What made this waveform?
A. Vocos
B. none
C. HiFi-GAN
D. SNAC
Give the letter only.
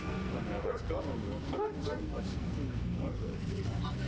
D